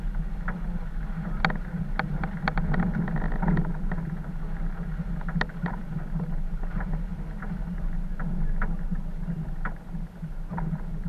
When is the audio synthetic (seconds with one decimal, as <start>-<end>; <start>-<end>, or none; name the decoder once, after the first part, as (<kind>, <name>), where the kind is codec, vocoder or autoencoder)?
none